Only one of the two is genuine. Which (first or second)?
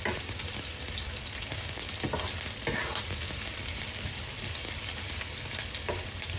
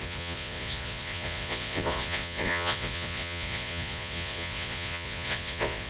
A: first